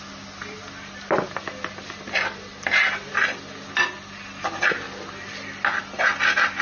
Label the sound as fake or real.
real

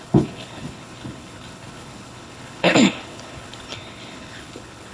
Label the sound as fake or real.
fake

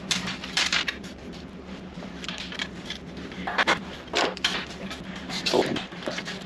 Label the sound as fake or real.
fake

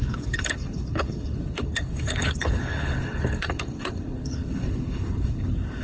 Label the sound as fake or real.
fake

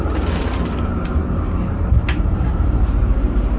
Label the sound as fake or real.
fake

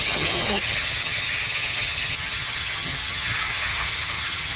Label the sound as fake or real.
fake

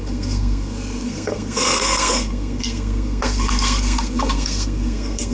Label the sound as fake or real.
fake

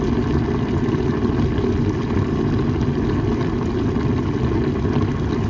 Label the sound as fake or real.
real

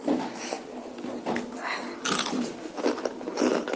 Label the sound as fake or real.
real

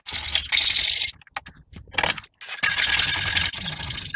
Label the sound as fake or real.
real